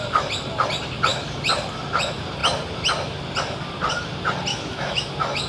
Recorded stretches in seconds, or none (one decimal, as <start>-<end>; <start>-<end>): 0.0-4.5; 5.1-5.5